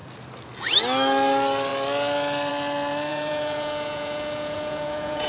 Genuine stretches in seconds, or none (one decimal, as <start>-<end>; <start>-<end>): 0.0-3.1